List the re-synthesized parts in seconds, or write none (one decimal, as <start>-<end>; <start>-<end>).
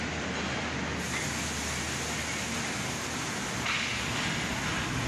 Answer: none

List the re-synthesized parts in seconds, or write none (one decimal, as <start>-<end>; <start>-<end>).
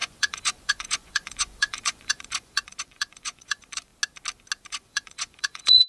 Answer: 0.0-3.9; 4.7-5.9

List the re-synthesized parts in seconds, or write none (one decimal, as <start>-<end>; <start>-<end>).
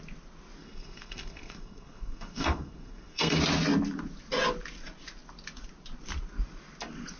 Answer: 0.6-3.4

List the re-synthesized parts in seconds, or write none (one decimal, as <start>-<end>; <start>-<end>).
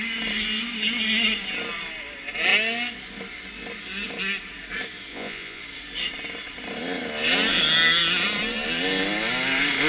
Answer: 5.1-5.6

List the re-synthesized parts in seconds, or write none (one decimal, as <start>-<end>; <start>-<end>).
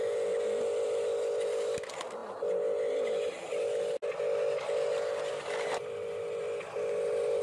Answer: none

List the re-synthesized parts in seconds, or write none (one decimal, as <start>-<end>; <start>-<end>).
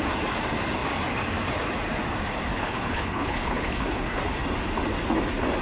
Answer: 2.5-4.2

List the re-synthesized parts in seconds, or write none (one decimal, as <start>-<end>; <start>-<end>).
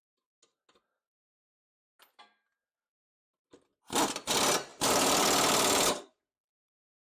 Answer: 4.7-6.2